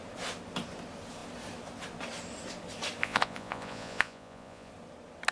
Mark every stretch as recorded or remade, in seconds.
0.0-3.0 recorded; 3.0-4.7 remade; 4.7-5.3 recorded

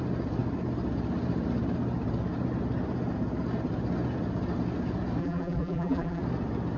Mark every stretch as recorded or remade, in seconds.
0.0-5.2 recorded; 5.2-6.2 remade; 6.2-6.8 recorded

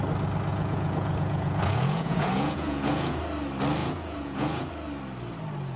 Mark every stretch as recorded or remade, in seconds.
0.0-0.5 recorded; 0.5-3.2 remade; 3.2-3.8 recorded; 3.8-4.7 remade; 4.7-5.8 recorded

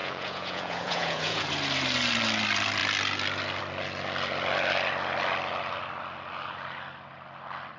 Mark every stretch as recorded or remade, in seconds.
0.0-1.5 remade; 1.5-7.8 recorded

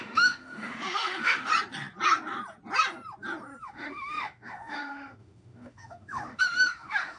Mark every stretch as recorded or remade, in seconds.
0.0-1.5 remade; 1.5-3.6 recorded; 3.6-7.2 remade

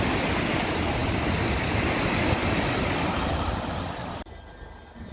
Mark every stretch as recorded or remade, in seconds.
0.0-1.0 recorded; 1.0-4.1 remade; 4.1-5.1 recorded

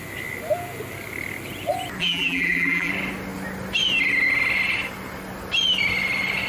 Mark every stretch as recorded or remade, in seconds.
0.0-2.0 recorded; 2.0-2.9 remade; 2.9-6.5 recorded